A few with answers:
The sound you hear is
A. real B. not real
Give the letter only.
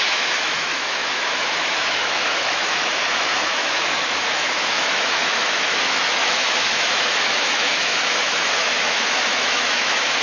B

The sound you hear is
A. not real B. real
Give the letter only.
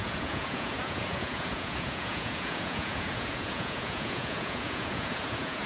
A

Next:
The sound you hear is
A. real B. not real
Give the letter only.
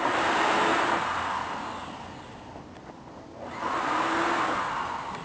A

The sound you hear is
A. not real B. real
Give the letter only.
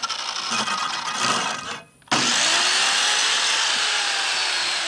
B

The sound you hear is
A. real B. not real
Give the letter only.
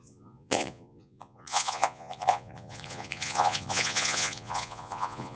B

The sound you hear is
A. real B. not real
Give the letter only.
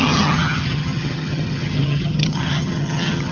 B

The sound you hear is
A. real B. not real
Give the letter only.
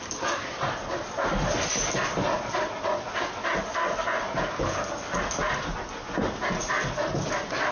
A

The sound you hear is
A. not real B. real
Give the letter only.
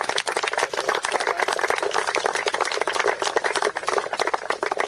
B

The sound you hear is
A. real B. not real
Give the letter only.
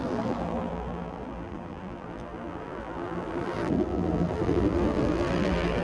B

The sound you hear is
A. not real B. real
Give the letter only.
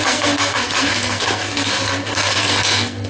A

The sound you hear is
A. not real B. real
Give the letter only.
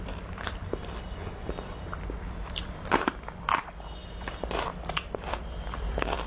A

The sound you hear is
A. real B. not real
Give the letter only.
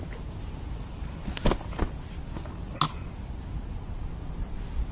A